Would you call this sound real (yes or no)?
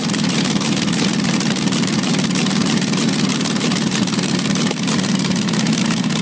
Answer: no